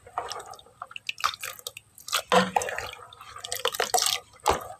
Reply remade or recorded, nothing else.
recorded